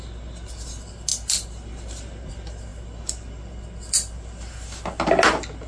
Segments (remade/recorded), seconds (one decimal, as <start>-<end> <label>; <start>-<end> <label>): 0.0-5.7 recorded